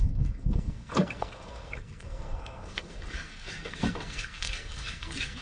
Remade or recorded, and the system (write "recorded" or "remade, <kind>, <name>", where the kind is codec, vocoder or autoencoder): remade, codec, SNAC